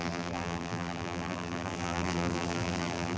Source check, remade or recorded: remade